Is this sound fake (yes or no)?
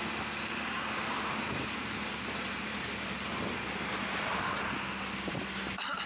no